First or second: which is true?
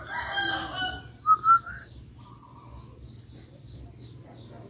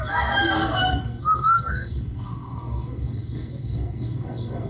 first